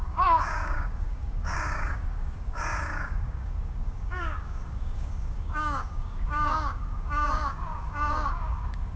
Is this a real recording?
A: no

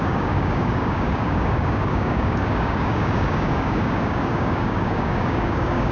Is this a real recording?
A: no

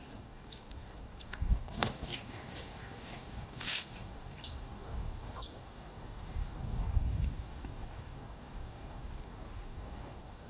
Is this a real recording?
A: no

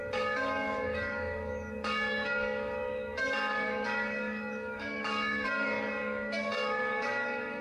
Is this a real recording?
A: no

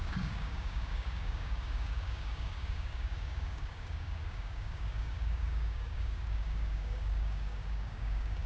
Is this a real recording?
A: no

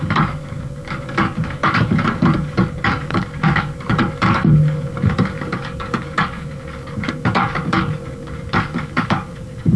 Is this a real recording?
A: no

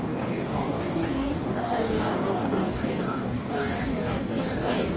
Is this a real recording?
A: no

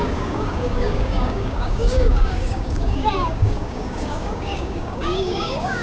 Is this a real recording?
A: no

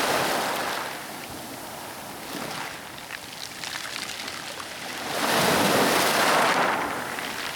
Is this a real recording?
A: yes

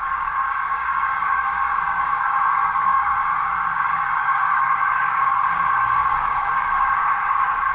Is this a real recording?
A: no